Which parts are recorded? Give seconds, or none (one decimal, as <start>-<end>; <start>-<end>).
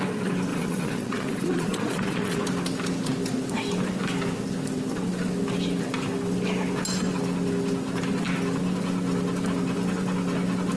0.0-0.5; 2.4-10.8